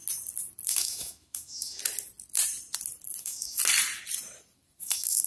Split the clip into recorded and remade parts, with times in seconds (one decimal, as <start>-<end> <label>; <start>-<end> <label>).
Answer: 0.0-0.7 recorded; 0.7-1.8 remade; 1.8-3.2 recorded; 3.2-3.6 remade; 3.6-4.8 recorded; 4.8-5.3 remade